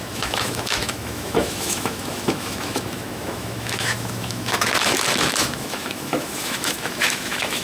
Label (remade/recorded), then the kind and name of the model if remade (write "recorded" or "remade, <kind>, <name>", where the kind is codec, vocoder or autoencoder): remade, autoencoder, DAC-VAE